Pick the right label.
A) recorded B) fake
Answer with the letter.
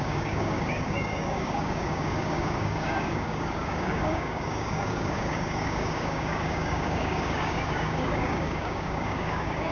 B